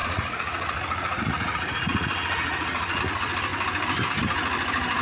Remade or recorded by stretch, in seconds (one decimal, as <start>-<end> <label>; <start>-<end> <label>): 0.0-3.0 remade; 3.0-5.0 recorded